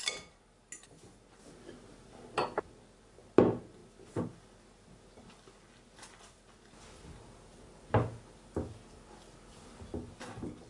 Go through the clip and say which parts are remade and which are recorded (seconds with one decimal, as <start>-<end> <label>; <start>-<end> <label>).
0.0-10.7 recorded